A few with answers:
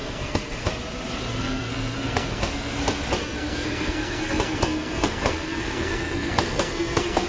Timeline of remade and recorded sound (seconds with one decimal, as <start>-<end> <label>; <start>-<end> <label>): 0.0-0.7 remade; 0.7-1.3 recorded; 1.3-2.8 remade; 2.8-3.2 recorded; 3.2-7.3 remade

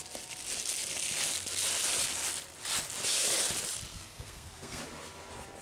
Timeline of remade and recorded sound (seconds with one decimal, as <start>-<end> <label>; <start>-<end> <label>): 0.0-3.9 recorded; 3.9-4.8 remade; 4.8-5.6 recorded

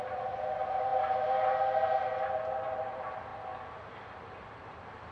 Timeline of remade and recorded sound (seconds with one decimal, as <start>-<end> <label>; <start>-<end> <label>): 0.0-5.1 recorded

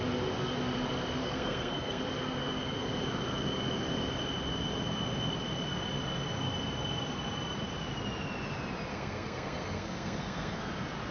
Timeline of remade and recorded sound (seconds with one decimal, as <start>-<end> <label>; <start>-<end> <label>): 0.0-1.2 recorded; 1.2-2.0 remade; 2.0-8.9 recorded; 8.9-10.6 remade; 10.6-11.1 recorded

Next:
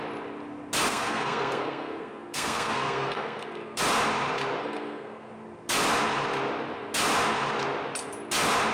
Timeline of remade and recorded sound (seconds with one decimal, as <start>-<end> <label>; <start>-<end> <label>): 0.0-0.9 recorded; 0.9-3.8 remade; 3.8-4.6 recorded; 4.6-5.3 remade; 5.3-8.7 recorded

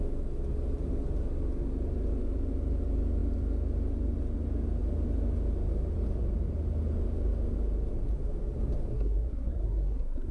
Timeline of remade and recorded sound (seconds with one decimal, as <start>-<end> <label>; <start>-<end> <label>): 0.0-8.9 recorded; 8.9-10.3 remade